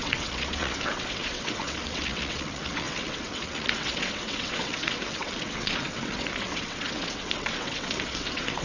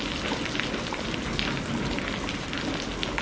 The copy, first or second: first